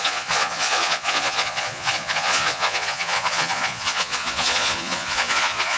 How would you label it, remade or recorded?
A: remade